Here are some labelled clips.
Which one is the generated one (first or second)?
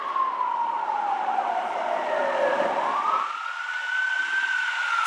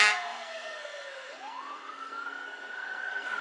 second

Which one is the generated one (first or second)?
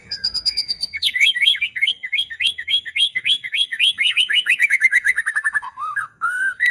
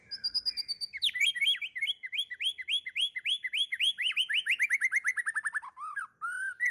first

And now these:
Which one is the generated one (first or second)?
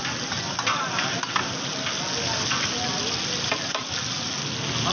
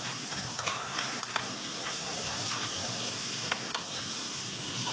second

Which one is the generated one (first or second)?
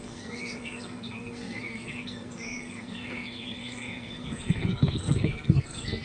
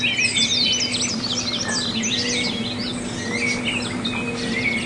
first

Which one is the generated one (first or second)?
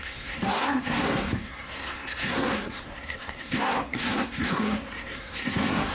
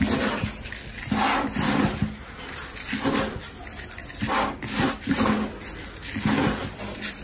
first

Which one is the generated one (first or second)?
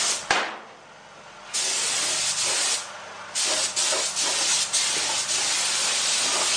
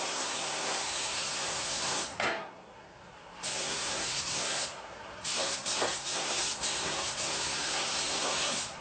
second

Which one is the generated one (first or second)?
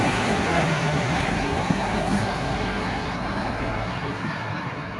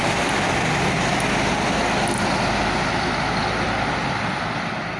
first